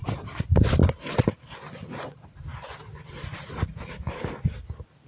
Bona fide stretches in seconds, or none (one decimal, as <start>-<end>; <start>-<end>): 0.0-0.8; 2.8-5.1